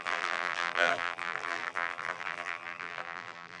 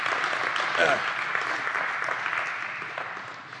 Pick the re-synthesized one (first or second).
first